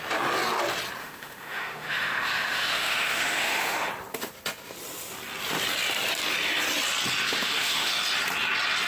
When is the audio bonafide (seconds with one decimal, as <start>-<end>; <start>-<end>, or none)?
0.0-1.0; 3.9-7.3; 7.9-8.9